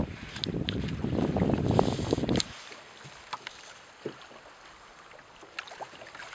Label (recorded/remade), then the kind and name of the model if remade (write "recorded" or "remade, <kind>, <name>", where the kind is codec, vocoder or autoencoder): recorded